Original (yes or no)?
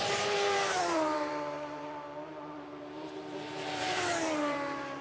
no